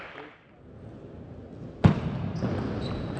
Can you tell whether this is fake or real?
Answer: real